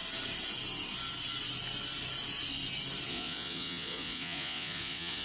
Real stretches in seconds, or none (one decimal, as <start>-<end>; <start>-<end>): 0.0-3.1